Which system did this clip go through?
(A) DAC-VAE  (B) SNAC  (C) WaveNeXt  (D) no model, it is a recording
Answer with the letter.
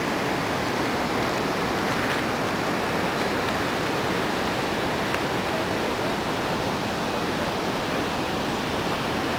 D